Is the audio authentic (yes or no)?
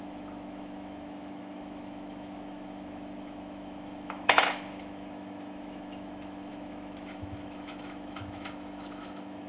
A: no